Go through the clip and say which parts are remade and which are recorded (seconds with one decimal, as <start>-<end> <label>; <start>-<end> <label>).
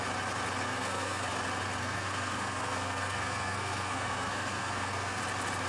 0.0-0.7 recorded; 0.7-1.3 remade; 1.3-1.8 recorded; 1.8-5.2 remade; 5.2-5.7 recorded